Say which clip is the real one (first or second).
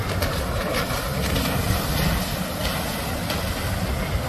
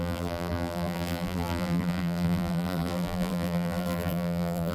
first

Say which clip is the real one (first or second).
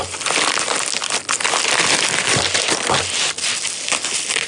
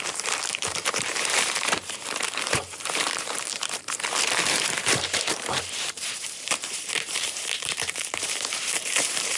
first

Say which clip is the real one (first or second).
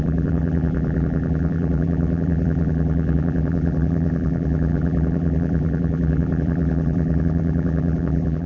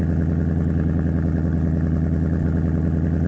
second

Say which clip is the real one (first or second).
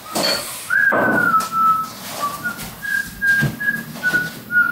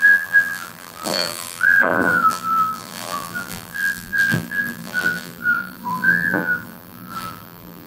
first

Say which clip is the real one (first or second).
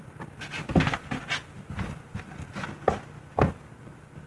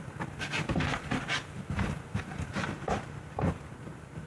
first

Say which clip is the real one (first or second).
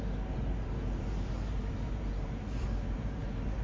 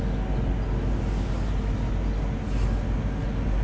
second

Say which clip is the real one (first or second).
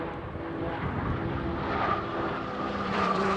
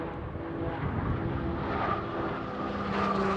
second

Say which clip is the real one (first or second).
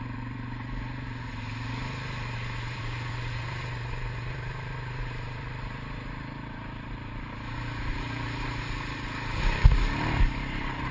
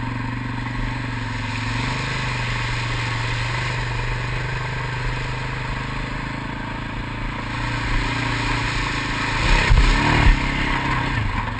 second